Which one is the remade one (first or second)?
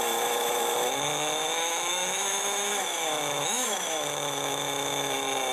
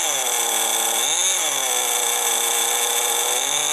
first